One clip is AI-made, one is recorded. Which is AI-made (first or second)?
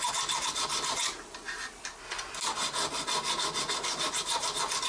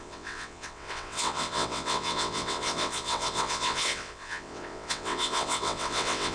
second